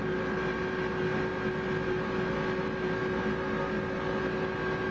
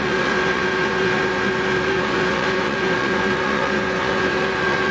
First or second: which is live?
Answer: first